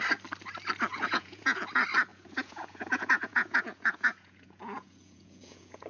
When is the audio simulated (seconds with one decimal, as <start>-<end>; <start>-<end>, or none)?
0.9-1.6; 2.1-5.9